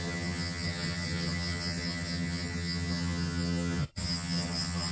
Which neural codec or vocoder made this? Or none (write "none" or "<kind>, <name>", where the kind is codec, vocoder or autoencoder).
vocoder, HiFi-GAN